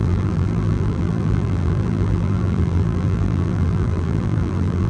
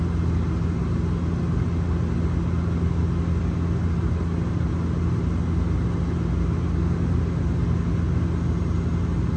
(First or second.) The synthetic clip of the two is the first